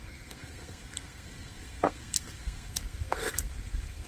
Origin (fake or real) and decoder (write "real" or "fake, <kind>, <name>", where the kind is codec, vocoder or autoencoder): fake, codec, SNAC